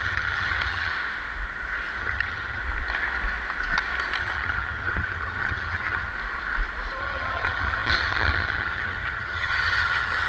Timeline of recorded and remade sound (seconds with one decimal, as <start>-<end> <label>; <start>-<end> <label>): 0.0-0.9 remade; 0.9-2.0 recorded; 2.0-2.6 remade; 2.6-4.2 recorded; 4.2-6.1 remade; 6.1-7.0 recorded; 7.0-10.3 remade